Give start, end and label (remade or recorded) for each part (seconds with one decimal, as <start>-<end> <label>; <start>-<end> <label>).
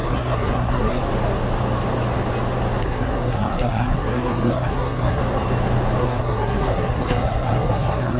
0.0-1.0 remade; 1.0-2.8 recorded; 2.8-5.2 remade; 5.2-6.0 recorded; 6.0-8.2 remade